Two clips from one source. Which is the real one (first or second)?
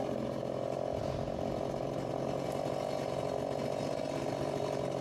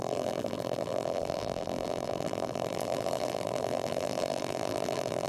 first